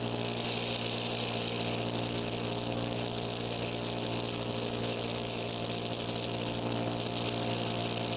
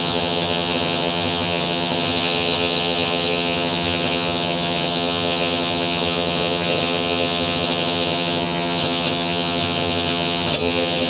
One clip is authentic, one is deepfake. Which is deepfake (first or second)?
second